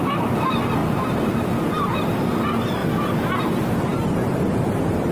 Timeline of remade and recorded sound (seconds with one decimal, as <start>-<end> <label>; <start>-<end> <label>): 0.0-0.8 recorded; 0.8-2.4 remade; 2.4-2.8 recorded; 2.8-3.4 remade; 3.4-3.9 recorded; 3.9-5.1 remade